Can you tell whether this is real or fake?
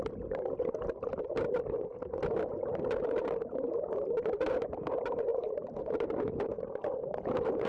fake